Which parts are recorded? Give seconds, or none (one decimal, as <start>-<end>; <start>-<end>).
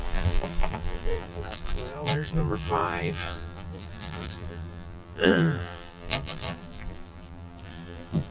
none